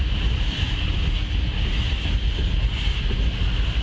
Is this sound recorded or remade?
recorded